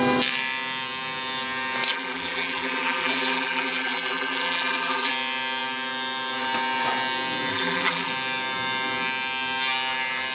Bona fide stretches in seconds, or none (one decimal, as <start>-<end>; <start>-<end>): 0.0-1.9; 5.1-7.5; 8.1-10.3